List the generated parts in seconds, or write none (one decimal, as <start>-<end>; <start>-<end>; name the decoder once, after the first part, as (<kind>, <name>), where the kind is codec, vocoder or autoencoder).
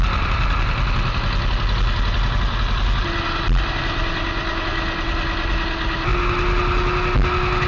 none